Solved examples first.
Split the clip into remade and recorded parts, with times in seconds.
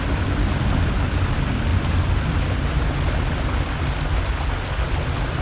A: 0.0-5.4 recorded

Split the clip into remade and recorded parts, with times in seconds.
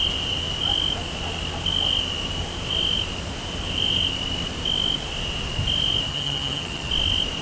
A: 0.0-6.1 recorded; 6.1-6.9 remade; 6.9-7.4 recorded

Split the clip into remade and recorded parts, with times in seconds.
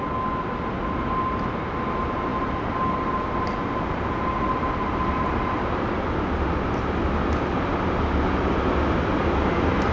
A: 0.0-9.9 recorded